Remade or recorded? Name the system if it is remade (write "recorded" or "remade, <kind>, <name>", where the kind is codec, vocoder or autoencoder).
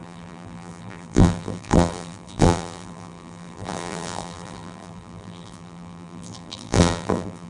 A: remade, vocoder, BigVGAN v2